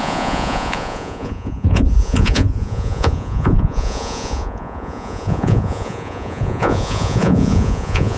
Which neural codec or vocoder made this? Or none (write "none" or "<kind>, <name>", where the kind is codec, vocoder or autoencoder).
vocoder, Vocos